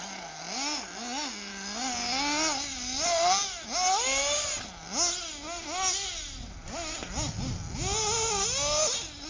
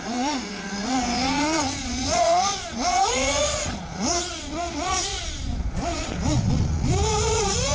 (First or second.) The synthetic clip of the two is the second